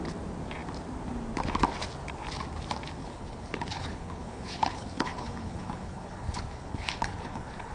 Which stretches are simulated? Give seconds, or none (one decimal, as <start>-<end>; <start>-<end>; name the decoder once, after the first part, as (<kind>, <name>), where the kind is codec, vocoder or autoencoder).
3.0-7.7 (codec, HILCodec)